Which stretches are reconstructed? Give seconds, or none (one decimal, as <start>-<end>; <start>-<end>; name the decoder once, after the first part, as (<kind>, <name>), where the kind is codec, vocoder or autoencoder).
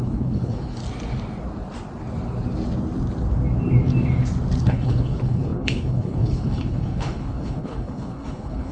0.0-0.8 (codec, HILCodec); 4.7-8.7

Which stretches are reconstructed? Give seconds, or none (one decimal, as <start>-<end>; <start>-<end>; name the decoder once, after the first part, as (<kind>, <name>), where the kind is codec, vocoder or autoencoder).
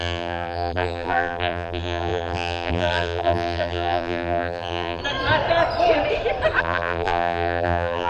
0.0-5.0 (vocoder, BigVGAN v2); 6.6-8.1